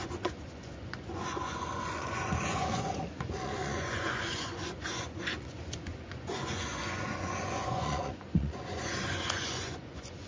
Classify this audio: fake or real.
fake